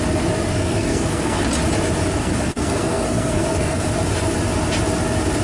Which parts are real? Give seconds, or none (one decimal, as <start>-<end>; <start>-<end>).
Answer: 0.0-0.5; 1.4-2.2; 3.9-5.4